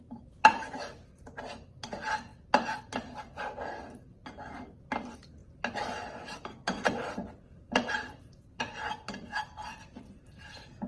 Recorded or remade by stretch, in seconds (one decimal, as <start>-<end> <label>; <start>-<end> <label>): 0.0-5.4 recorded; 5.4-10.9 remade